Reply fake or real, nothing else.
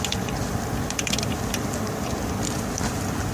fake